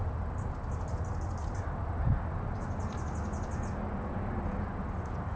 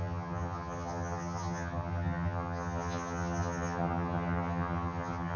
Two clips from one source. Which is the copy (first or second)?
second